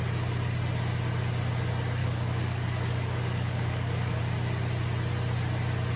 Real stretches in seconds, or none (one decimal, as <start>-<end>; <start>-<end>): 0.0-2.0; 4.2-6.0